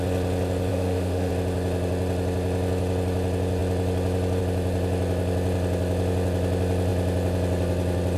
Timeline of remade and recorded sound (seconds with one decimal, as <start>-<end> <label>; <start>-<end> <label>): 0.0-0.7 recorded; 0.7-1.3 remade; 1.3-8.2 recorded